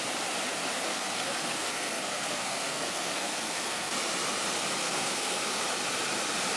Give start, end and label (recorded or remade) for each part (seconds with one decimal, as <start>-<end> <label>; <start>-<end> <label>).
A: 0.0-0.9 recorded; 0.9-3.9 remade; 3.9-4.8 recorded; 4.8-5.6 remade; 5.6-6.6 recorded